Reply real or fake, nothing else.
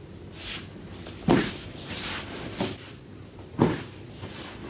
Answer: real